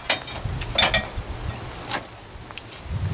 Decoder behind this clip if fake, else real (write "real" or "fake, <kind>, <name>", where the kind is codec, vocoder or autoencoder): real